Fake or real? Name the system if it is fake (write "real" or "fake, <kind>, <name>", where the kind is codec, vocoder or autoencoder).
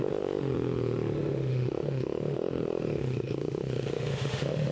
fake, autoencoder, DAC-VAE